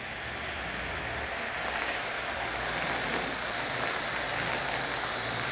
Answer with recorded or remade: recorded